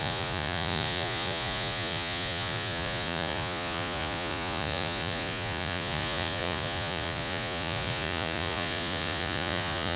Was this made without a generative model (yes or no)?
no